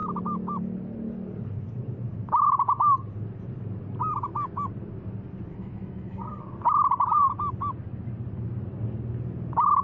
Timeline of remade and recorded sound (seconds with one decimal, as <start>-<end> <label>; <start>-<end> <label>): 0.0-5.5 recorded; 5.5-6.4 remade; 6.4-9.8 recorded

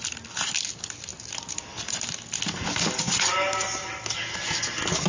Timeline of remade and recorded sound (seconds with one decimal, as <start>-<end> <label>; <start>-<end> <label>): 0.0-5.1 recorded

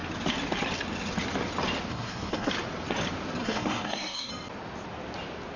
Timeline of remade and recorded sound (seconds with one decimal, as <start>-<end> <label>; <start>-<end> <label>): 0.0-1.9 recorded; 1.9-2.5 remade; 2.5-3.4 recorded; 3.4-4.3 remade; 4.3-5.6 recorded

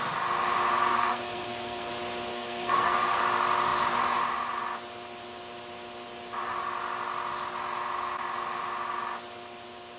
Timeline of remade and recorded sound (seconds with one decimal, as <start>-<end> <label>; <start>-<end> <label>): 0.0-0.9 recorded; 0.9-1.9 remade; 1.9-2.3 recorded; 2.3-3.2 remade; 3.2-10.0 recorded

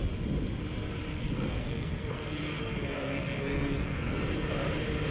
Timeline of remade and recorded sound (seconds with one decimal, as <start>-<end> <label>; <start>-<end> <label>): 0.0-1.1 recorded; 1.1-4.2 remade; 4.2-5.1 recorded

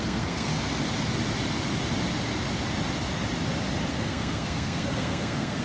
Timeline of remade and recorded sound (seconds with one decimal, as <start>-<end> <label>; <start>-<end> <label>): 0.0-0.5 remade; 0.5-3.9 recorded; 3.9-5.6 remade